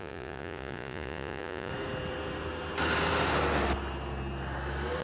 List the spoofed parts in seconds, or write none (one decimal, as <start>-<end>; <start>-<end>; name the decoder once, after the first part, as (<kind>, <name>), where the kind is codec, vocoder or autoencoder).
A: 0.0-1.7 (vocoder, Vocos)